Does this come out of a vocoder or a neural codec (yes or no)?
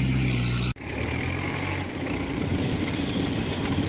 no